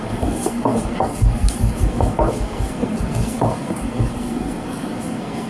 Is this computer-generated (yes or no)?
yes